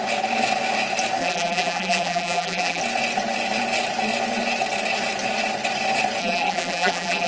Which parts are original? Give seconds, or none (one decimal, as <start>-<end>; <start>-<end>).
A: 0.0-1.2; 2.8-6.2